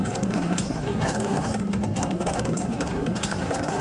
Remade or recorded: remade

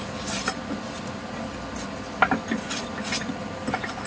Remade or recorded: recorded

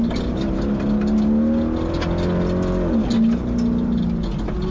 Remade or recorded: recorded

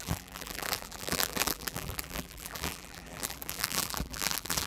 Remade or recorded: remade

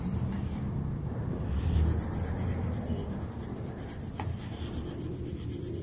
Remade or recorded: remade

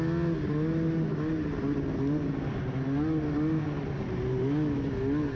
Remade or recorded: recorded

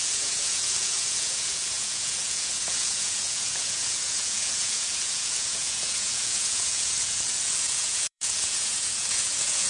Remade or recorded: remade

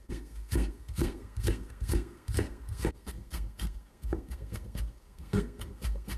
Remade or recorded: remade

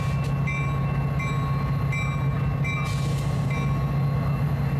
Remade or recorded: recorded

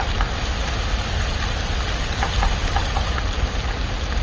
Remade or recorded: recorded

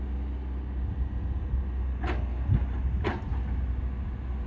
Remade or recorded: recorded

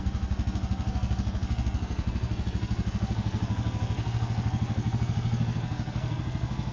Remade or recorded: remade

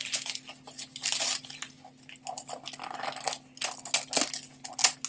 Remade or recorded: recorded